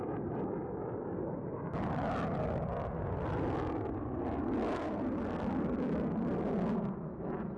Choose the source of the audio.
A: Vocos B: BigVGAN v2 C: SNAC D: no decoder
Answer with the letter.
D